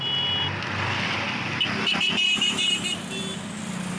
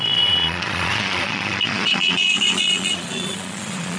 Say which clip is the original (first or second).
first